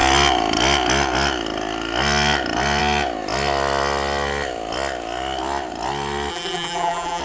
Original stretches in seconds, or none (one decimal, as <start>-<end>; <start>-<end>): 0.0-6.3